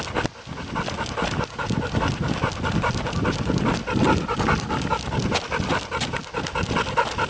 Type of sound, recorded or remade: recorded